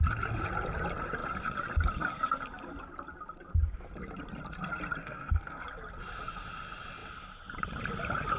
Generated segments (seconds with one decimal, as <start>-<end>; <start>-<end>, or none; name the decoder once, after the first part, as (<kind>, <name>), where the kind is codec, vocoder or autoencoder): 5.0-5.6 (codec, SNAC)